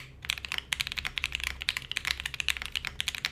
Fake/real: real